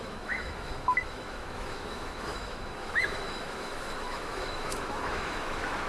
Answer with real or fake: fake